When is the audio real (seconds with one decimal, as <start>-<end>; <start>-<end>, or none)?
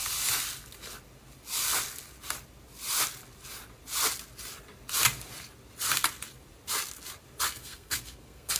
0.0-7.6